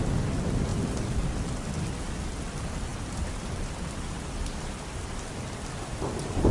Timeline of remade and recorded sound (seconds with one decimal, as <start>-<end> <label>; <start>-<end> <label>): 0.0-6.5 remade